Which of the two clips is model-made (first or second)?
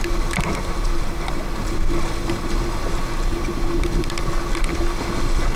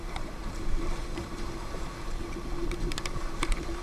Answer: second